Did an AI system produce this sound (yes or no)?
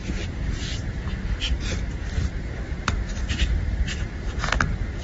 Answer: no